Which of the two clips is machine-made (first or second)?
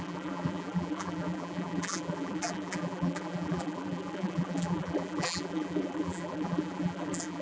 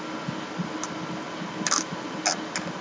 first